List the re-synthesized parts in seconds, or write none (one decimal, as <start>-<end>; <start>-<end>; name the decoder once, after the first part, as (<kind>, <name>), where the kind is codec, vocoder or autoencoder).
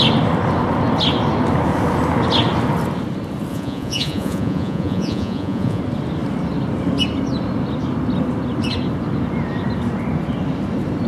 3.5-5.8 (vocoder, Vocos)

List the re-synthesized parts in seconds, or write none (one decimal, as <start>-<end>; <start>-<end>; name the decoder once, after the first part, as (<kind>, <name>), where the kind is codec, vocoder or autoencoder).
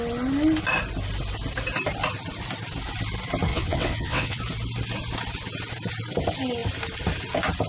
3.5-4.4 (vocoder, WaveNeXt)